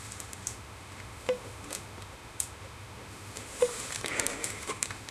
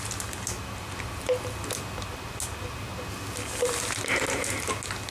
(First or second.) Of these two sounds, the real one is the second